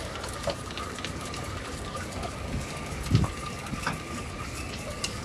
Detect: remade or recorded remade